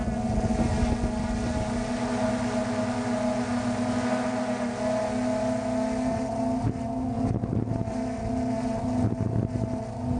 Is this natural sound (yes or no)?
yes